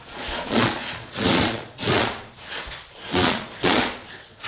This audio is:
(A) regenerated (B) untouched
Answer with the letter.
A